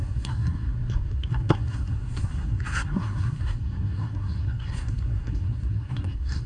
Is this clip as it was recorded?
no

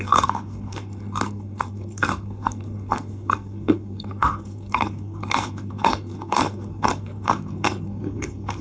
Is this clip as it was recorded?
no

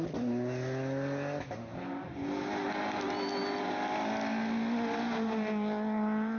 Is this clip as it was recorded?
yes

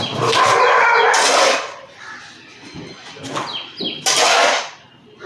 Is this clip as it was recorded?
yes